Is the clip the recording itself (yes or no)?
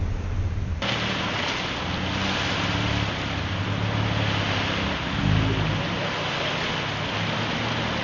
yes